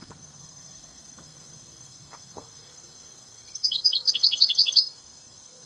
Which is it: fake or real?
fake